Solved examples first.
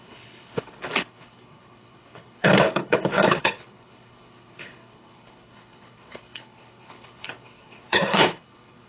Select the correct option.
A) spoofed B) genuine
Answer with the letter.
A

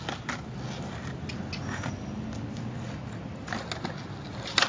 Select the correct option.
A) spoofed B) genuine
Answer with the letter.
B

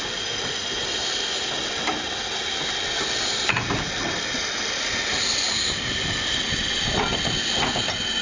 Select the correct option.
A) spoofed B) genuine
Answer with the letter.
B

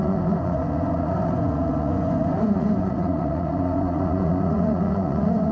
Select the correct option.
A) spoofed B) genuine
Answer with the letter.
A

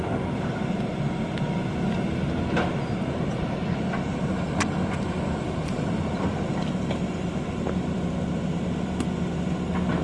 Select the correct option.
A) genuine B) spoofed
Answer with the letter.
A